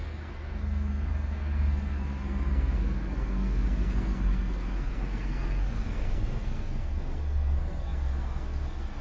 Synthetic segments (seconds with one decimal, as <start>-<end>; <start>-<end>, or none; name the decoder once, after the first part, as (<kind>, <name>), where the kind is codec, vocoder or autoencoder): 0.0-9.0 (codec, SNAC)